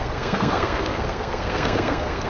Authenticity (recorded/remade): remade